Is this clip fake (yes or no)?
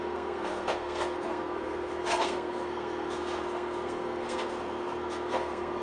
yes